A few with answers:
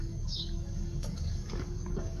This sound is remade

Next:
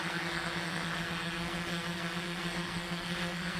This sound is remade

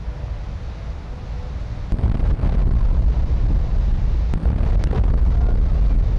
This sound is recorded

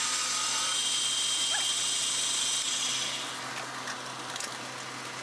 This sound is recorded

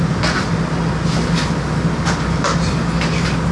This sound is recorded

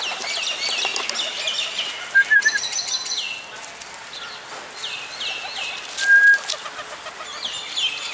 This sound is recorded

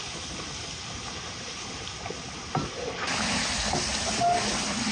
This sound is recorded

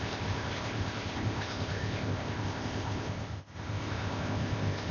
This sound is remade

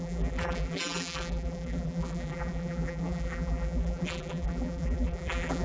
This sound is remade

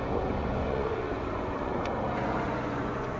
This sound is remade